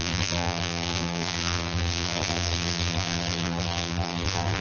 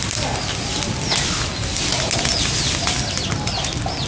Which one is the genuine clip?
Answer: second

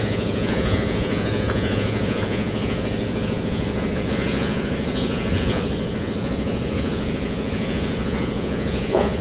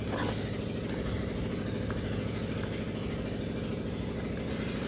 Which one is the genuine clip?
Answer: second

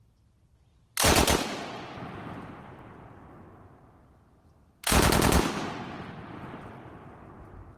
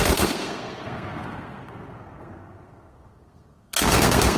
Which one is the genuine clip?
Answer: first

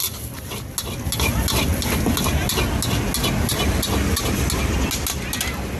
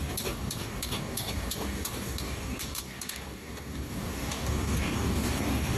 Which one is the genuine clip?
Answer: first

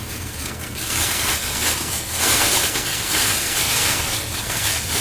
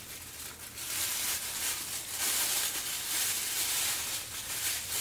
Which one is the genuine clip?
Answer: second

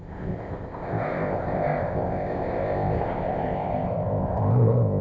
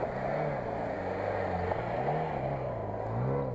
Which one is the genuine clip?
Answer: second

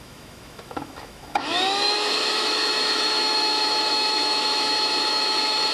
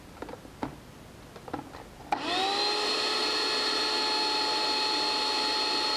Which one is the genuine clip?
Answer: second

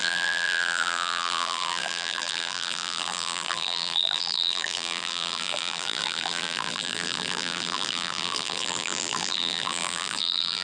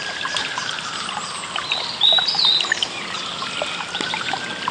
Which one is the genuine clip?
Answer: second